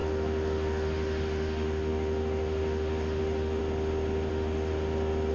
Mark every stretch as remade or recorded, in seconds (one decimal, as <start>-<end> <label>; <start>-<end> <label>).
0.0-3.6 remade; 3.6-4.3 recorded; 4.3-4.7 remade; 4.7-5.3 recorded